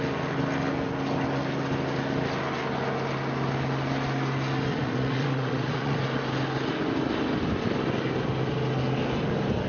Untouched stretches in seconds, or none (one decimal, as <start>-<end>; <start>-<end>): 0.0-4.7; 6.0-9.7